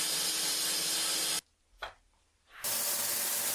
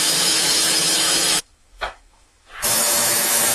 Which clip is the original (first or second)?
first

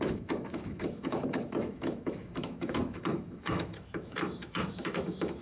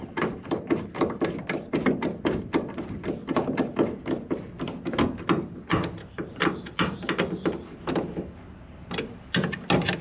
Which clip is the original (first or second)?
second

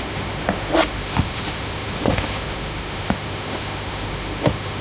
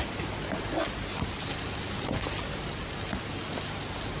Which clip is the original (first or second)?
second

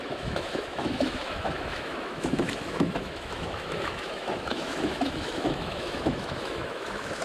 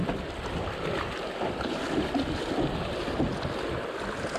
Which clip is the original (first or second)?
second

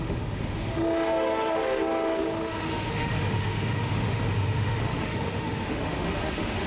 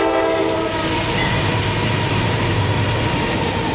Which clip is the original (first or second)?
second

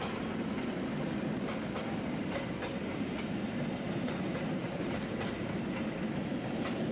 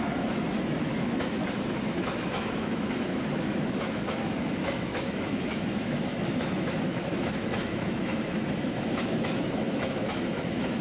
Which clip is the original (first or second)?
first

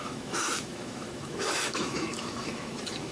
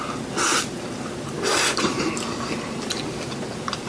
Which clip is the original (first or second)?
second